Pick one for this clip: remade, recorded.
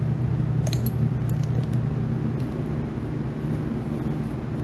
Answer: recorded